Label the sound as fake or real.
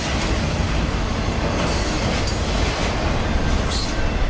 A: real